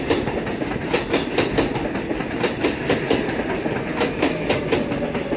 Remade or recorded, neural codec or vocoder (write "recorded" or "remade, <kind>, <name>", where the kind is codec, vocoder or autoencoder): recorded